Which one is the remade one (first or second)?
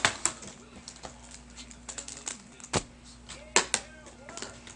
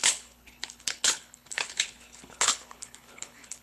second